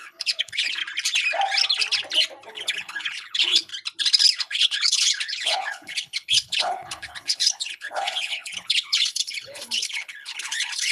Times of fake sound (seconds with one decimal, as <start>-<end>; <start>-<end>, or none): 0.0-0.8; 2.5-3.7; 4.4-10.9